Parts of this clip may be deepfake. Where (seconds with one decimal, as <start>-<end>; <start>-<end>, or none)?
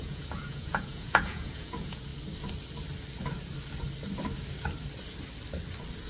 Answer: 0.0-2.1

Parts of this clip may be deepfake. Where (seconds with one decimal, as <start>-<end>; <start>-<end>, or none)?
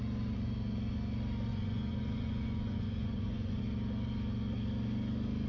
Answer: 1.5-3.6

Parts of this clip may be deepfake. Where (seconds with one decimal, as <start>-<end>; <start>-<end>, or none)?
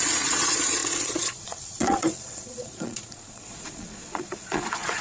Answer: 0.0-5.0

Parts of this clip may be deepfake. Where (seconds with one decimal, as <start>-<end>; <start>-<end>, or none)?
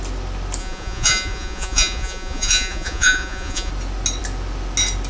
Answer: 0.6-3.7